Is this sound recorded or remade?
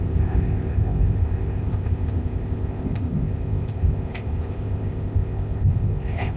remade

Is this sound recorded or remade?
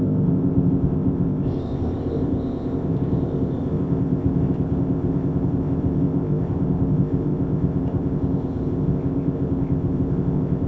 remade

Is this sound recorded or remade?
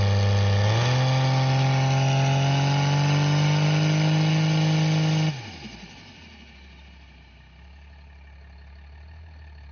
recorded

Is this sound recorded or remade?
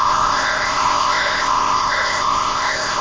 remade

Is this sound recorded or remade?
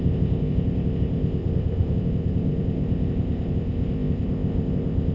remade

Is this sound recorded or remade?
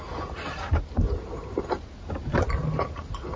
recorded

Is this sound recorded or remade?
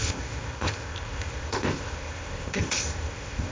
remade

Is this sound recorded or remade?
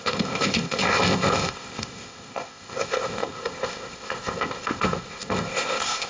remade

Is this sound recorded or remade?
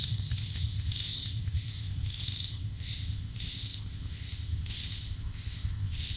remade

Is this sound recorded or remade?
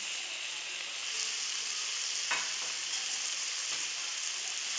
recorded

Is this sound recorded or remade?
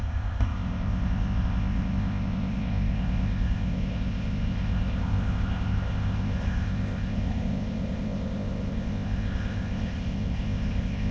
remade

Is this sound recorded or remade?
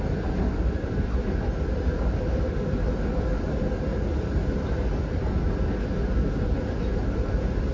recorded